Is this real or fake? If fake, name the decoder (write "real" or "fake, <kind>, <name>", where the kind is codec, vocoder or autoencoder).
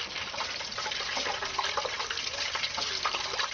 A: real